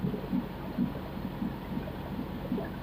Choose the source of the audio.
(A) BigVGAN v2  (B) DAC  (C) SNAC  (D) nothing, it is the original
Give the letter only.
D